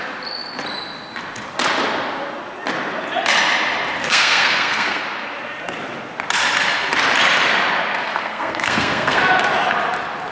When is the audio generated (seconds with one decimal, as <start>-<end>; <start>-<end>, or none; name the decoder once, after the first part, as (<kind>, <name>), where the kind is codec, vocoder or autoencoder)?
4.0-5.0 (codec, SNAC); 8.2-9.2